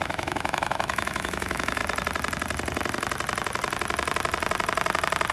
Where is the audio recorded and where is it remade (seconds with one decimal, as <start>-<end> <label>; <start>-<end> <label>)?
0.0-1.8 remade; 1.8-5.3 recorded